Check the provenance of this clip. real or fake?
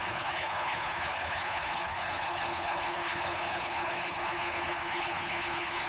fake